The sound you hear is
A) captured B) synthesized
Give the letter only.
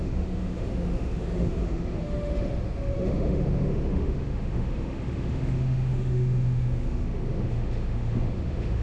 B